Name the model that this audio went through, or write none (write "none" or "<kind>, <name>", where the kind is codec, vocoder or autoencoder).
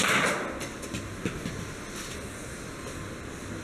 none